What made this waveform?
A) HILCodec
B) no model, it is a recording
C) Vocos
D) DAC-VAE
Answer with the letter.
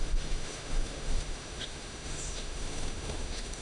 D